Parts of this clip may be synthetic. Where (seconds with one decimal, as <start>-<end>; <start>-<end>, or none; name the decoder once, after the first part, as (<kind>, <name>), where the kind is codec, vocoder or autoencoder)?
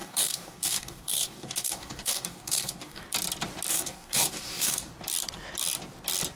0.0-3.0 (codec, DAC); 3.7-4.9